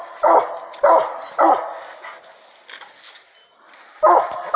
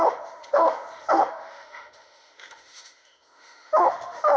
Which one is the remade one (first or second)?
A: second